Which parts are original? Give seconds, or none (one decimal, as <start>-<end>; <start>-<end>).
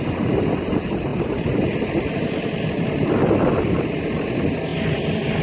0.0-5.4